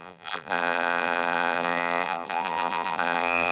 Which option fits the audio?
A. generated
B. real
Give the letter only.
A